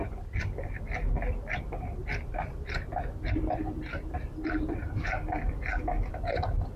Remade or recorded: remade